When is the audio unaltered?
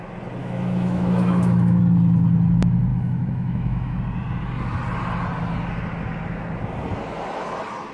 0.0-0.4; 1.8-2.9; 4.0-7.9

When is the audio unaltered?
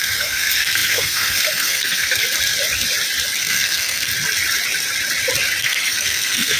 2.2-3.4; 4.1-5.6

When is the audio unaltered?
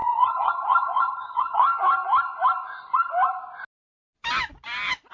1.6-5.1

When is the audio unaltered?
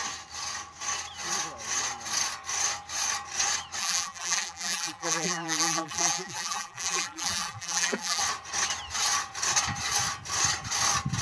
0.0-3.8; 8.2-11.2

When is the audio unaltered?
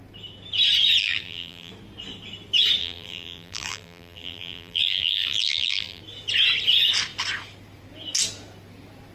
0.0-1.0; 1.7-2.8; 6.0-9.1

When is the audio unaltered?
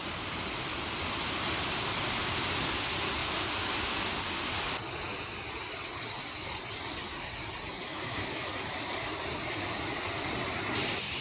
0.0-7.9; 8.5-11.2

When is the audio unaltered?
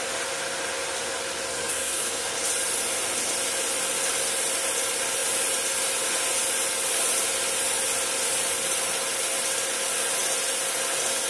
0.0-1.5; 2.3-11.3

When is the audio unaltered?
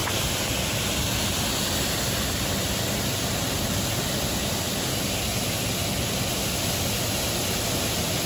0.0-8.3